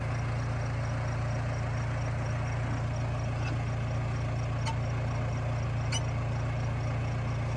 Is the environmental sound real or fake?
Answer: real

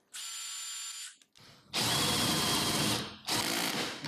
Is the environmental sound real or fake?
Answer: real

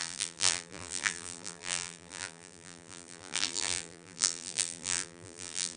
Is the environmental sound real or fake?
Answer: fake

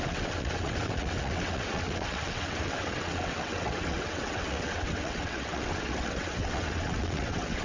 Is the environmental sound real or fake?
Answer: fake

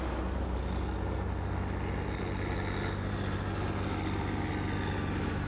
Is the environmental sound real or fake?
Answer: real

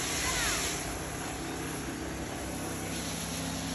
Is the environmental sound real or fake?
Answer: real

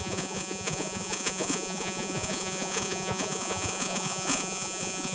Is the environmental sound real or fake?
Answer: fake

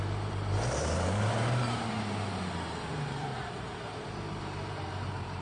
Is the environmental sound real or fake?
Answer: fake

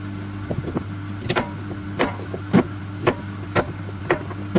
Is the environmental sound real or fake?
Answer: real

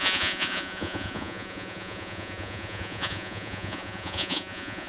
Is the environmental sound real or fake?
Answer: fake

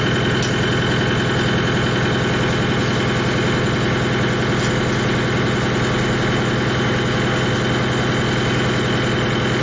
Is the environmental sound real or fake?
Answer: real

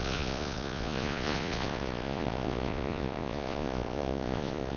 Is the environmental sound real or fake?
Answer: fake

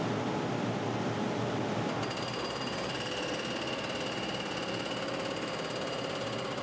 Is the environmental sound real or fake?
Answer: real